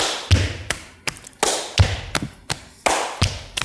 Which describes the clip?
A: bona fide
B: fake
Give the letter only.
A